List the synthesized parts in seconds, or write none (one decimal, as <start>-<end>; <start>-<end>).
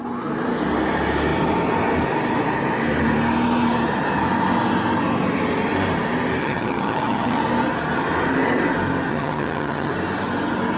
6.4-7.4; 9.1-9.9